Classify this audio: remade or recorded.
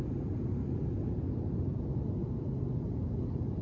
recorded